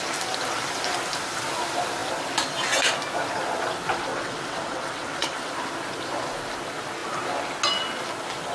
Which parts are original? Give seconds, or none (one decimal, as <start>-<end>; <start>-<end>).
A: 0.0-4.1; 5.5-8.5